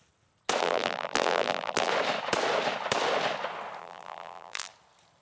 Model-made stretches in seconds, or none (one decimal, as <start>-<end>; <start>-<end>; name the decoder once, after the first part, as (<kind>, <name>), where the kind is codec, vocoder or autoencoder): 0.6-1.9 (vocoder, BigVGAN v2); 3.8-4.7